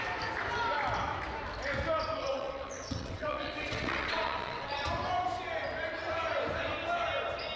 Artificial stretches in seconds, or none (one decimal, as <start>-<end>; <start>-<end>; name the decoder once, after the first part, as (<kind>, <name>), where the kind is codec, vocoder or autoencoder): 2.2-4.9 (vocoder, WaveNeXt)